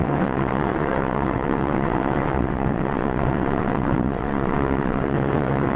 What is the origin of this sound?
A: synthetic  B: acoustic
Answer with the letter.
A